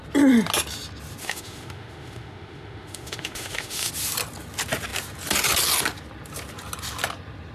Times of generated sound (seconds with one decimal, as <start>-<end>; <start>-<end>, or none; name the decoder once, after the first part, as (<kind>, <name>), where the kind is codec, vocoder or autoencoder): 1.2-3.9 (autoencoder, DAC-VAE)